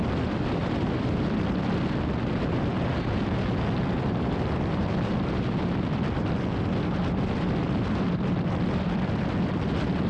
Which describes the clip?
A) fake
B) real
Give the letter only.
B